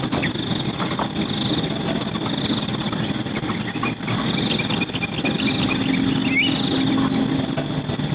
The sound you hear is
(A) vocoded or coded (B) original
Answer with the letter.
B